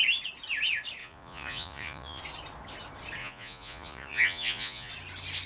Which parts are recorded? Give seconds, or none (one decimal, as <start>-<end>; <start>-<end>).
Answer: 0.0-1.0; 2.2-3.2; 4.9-5.5